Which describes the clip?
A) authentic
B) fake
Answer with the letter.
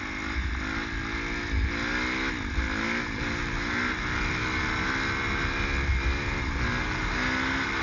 A